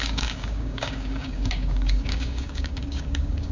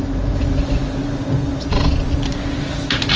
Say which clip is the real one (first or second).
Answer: second